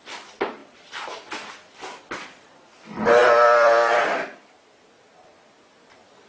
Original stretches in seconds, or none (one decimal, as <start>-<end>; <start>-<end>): 0.0-0.6; 1.5-3.2